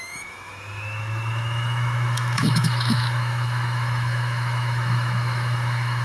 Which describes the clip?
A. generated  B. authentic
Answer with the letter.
A